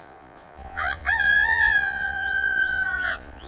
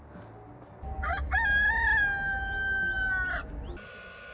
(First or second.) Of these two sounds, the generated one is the first